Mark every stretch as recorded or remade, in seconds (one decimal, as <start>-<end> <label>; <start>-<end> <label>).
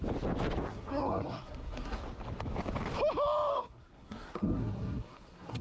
0.0-0.7 recorded; 0.7-2.0 remade; 2.0-3.5 recorded; 3.5-5.6 remade